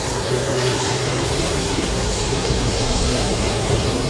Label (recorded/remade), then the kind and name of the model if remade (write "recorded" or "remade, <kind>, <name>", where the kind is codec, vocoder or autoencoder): remade, codec, SNAC